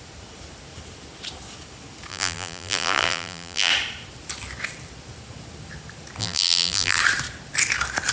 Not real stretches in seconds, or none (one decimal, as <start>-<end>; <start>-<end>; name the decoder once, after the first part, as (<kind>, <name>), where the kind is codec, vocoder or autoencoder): 2.1-3.7 (vocoder, BigVGAN v2); 6.2-7.0